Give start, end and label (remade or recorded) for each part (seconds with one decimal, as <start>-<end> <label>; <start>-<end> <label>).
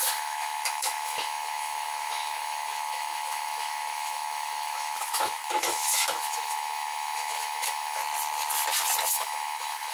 0.0-8.0 remade; 8.0-9.1 recorded; 9.1-9.9 remade